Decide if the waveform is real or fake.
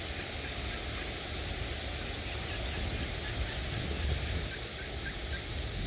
real